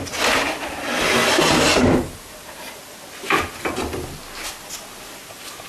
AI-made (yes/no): no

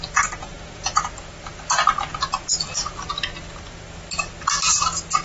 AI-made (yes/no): no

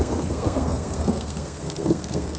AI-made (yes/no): yes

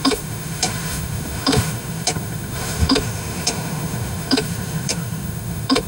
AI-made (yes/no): yes